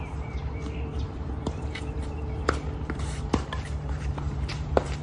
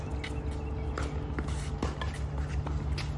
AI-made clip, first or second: first